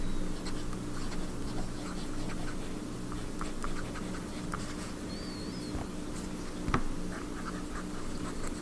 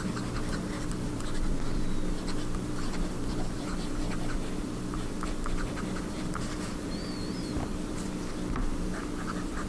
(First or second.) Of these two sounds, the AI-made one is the second